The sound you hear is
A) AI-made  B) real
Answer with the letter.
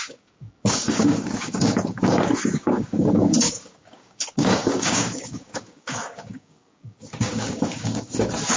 A